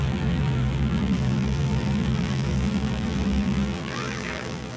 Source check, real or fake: fake